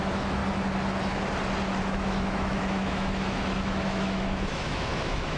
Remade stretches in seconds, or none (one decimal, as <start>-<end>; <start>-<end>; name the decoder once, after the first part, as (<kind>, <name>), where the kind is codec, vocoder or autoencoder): 0.0-0.4 (autoencoder, DAC-VAE); 1.8-5.4